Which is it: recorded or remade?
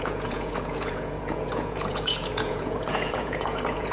remade